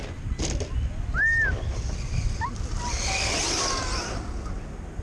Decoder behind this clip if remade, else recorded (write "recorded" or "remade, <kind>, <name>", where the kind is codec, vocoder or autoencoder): recorded